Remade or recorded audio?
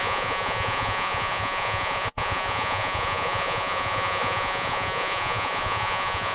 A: remade